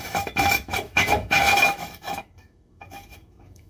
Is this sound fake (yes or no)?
yes